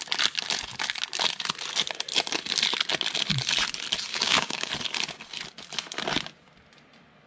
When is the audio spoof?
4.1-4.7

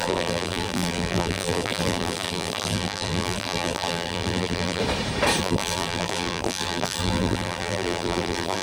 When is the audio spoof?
0.0-4.8; 5.4-8.6

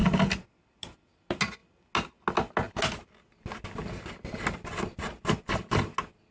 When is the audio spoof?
none